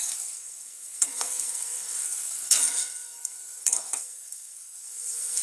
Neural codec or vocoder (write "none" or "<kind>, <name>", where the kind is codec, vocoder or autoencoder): codec, SNAC